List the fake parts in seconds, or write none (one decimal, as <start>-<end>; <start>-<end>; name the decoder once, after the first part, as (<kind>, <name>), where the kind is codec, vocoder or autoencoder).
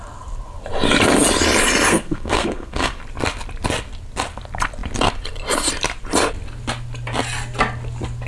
1.9-3.0 (codec, SNAC)